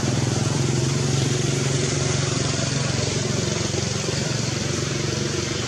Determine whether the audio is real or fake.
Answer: fake